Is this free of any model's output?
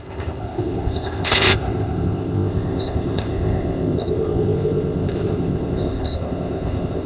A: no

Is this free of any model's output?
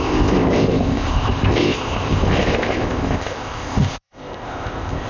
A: no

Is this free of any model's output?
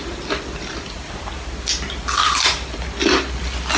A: yes